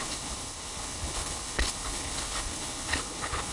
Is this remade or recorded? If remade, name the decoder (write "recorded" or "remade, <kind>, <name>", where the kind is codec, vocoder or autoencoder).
remade, codec, HILCodec